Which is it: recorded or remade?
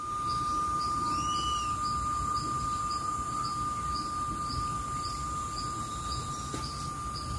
recorded